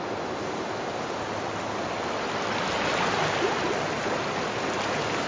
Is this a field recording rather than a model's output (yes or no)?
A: yes